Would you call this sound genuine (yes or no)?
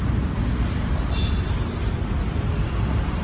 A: yes